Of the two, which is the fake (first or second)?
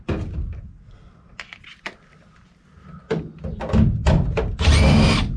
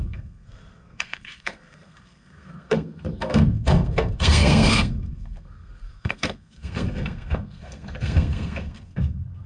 second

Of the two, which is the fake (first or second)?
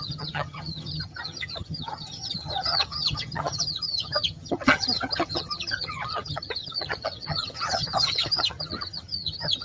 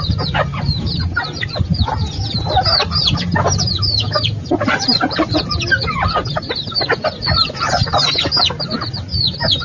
first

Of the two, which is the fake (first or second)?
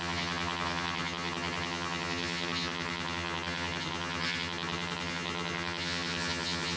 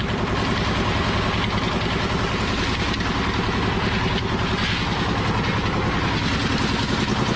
first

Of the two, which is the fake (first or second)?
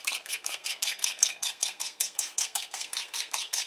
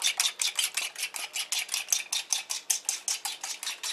first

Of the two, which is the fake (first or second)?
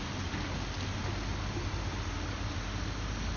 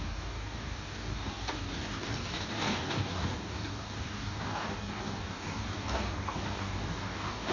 second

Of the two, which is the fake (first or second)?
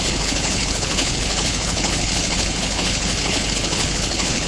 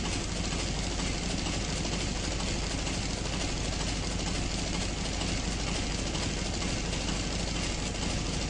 first